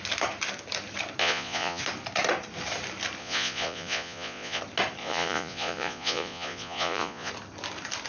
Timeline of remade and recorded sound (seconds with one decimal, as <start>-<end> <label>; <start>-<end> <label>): 0.0-1.2 recorded; 1.2-1.8 remade; 1.8-3.2 recorded; 3.2-4.6 remade; 4.6-5.0 recorded; 5.0-7.3 remade; 7.3-8.1 recorded